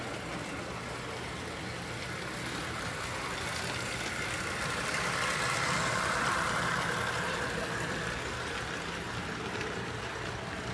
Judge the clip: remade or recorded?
recorded